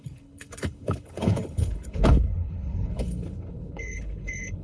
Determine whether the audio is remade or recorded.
remade